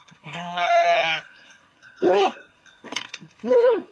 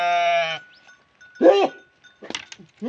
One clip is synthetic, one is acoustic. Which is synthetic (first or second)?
first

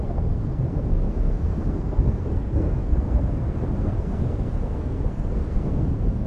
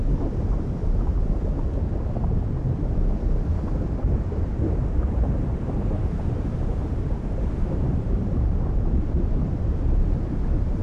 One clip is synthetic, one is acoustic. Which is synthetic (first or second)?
first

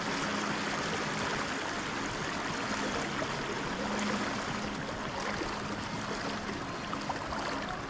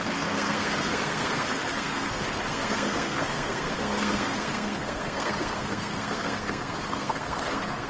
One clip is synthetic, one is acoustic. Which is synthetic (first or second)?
second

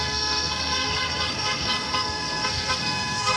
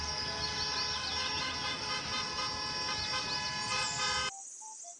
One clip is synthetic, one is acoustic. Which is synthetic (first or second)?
first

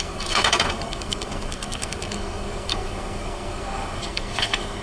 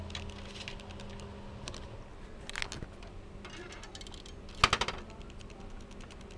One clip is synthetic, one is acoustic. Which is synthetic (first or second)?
first